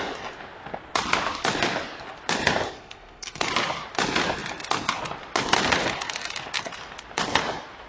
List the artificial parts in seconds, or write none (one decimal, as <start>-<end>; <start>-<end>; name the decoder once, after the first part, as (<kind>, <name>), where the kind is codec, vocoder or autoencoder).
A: 2.7-3.5 (codec, SNAC)